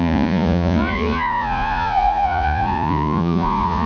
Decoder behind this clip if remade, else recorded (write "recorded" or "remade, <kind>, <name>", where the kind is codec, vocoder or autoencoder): remade, vocoder, Vocos